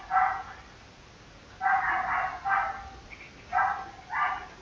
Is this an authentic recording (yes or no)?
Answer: yes